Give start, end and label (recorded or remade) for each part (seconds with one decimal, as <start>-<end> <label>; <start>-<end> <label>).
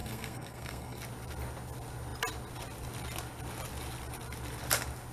0.0-1.0 remade; 1.0-5.1 recorded